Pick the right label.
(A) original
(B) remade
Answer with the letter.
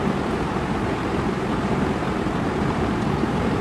B